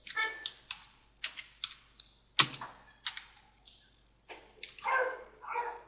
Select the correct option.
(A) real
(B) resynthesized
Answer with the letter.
A